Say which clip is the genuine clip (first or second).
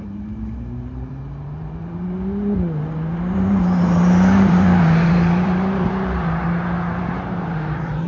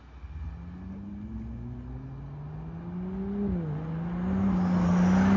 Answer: second